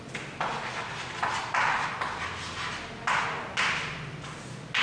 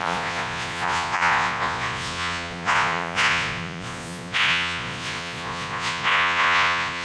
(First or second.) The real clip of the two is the first